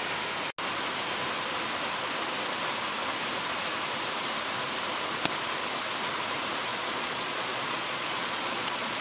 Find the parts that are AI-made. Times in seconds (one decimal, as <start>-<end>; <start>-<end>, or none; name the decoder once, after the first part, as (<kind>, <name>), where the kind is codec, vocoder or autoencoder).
6.7-9.0 (vocoder, Vocos)